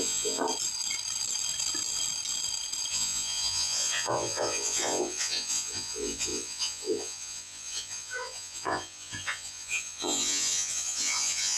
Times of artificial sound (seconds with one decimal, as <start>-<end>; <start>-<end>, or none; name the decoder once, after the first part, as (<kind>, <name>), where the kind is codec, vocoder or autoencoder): 0.0-0.4 (vocoder, Vocos); 2.9-11.6